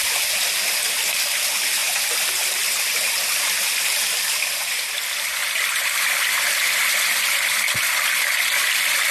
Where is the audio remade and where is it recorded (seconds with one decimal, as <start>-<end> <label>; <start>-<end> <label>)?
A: 0.0-9.1 recorded

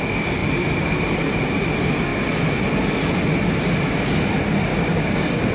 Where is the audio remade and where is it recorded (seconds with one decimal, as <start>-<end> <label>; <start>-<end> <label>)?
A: 0.0-4.7 recorded; 4.7-5.5 remade

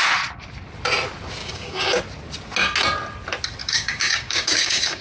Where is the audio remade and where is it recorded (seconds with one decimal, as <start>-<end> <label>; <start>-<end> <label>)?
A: 0.0-1.4 recorded; 1.4-2.0 remade; 2.0-3.6 recorded; 3.6-5.0 remade